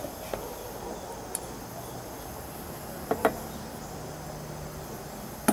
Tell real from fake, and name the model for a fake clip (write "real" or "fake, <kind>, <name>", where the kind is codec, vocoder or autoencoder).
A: real